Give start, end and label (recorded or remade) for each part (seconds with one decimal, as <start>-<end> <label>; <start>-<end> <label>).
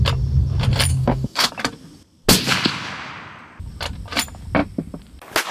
0.0-0.9 recorded; 0.9-1.5 remade; 1.5-5.5 recorded